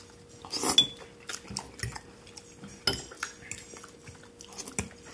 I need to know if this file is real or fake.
real